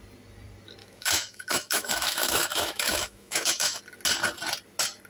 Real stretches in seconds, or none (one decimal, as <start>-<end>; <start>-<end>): 0.0-0.8; 3.8-5.1